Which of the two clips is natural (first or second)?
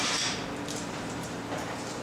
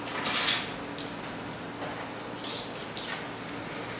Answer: second